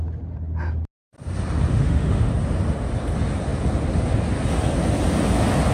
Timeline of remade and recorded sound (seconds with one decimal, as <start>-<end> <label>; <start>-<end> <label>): 0.0-1.7 recorded; 1.7-2.3 remade; 2.3-5.7 recorded